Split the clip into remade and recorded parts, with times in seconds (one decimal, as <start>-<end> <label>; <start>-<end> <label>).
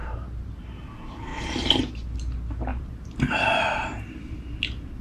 0.0-0.8 remade; 0.8-1.3 recorded; 1.3-1.8 remade; 1.8-2.7 recorded; 2.7-3.6 remade; 3.6-5.0 recorded